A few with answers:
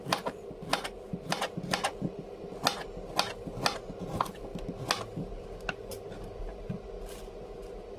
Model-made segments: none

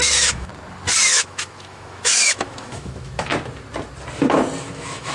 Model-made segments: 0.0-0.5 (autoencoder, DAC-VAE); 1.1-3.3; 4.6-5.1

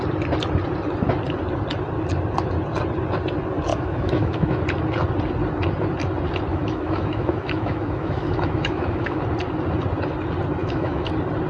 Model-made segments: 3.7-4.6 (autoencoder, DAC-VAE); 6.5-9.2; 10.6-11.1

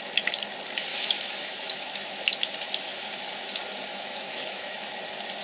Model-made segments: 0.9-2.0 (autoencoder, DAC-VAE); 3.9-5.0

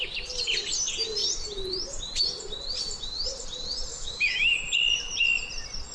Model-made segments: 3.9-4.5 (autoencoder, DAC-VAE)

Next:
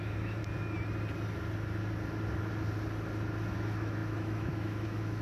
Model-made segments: 0.0-0.4 (autoencoder, DAC-VAE); 3.5-5.2

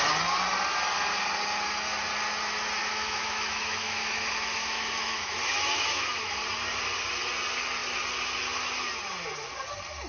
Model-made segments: 2.8-6.4 (autoencoder, DAC-VAE)

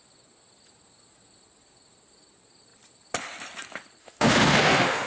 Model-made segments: 4.0-5.1 (autoencoder, DAC-VAE)